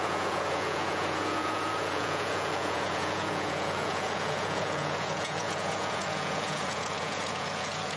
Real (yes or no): no